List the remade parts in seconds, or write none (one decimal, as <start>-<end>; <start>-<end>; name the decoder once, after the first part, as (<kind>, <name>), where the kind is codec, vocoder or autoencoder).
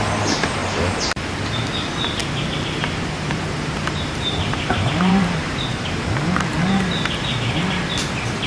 0.6-1.1 (vocoder, BigVGAN v2); 2.2-6.5